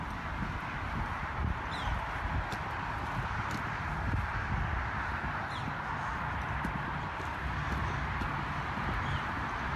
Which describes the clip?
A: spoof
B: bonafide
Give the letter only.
B